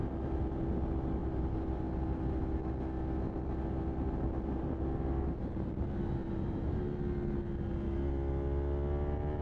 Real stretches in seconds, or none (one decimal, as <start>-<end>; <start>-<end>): 0.0-1.2; 1.8-6.2; 6.8-9.4